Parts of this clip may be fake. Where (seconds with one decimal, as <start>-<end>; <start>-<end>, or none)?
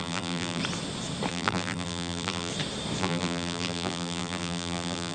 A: 0.0-0.6; 1.3-2.5; 3.0-5.1